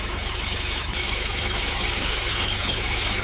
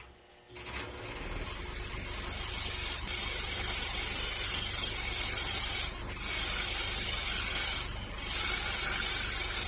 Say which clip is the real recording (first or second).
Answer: second